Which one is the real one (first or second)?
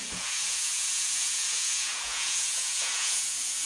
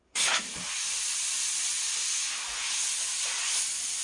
second